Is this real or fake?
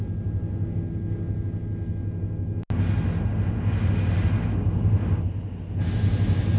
real